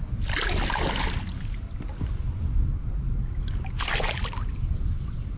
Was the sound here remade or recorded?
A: recorded